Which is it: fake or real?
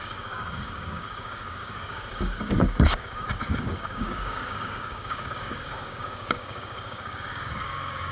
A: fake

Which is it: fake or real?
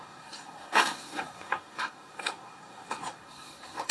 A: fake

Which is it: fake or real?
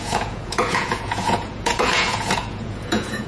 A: fake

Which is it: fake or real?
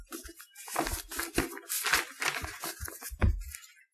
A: real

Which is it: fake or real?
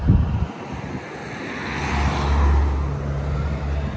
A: real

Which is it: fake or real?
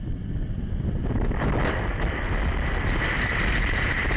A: real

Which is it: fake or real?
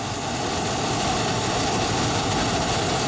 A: real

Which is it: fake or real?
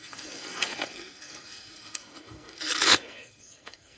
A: fake